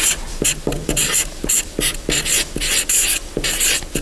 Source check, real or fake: fake